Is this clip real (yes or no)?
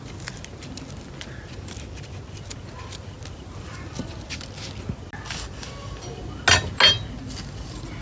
yes